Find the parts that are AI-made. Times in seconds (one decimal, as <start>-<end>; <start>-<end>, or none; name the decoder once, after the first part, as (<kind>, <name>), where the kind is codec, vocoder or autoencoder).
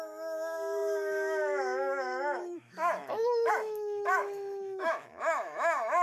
0.0-6.0 (autoencoder, DAC-VAE)